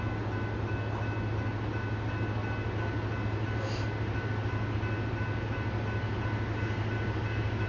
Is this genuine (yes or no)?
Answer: yes